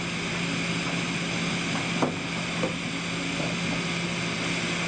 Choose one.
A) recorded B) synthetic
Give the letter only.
A